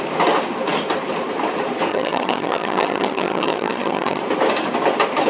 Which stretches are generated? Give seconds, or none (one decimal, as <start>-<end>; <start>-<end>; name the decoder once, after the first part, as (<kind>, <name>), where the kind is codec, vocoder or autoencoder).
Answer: 1.9-4.2 (vocoder, HiFi-GAN)